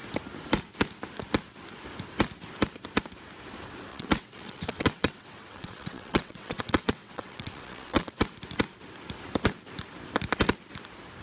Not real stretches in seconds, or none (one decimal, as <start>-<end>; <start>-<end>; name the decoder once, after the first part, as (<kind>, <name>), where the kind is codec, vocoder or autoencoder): 3.9-8.2 (vocoder, WaveNeXt)